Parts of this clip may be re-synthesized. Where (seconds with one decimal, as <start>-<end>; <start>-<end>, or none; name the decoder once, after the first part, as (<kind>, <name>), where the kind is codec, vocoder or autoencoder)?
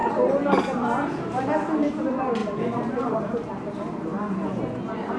none